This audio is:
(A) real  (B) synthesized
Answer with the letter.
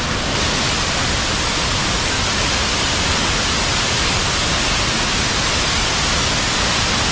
A